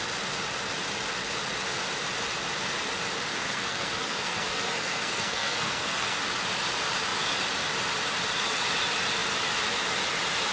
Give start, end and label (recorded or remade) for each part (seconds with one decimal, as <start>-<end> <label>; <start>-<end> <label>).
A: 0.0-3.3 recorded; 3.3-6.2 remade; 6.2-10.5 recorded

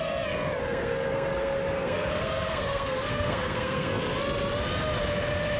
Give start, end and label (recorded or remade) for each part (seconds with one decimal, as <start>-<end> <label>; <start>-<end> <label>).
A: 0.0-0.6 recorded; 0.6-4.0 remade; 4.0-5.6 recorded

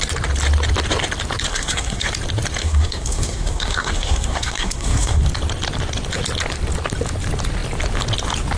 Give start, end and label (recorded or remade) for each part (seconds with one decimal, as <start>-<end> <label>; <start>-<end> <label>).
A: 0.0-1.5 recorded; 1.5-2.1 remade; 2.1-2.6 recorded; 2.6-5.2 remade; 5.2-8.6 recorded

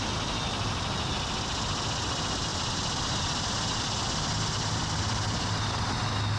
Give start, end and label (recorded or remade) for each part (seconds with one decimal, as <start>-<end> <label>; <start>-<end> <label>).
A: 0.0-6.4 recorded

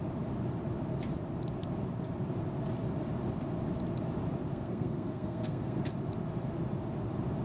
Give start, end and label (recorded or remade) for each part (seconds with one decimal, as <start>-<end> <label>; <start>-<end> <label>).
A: 0.0-4.5 recorded; 4.5-5.8 remade; 5.8-7.4 recorded